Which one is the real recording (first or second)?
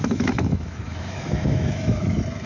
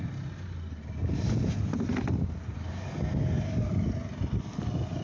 second